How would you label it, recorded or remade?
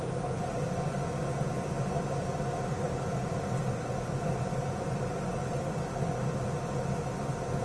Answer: recorded